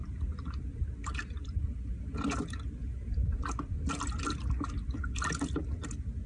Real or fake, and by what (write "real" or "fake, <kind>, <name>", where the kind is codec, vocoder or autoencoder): real